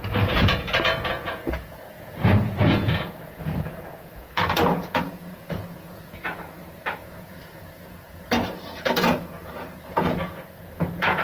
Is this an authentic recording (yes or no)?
no